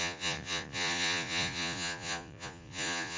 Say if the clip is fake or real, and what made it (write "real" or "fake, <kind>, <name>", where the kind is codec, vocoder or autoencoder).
fake, vocoder, Vocos